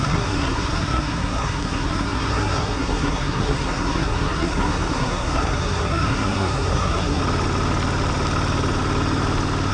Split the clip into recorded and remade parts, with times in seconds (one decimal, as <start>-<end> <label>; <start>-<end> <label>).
0.0-7.2 remade; 7.2-9.7 recorded